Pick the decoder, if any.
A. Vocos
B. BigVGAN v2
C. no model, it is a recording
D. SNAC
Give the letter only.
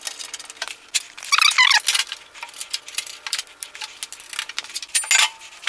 C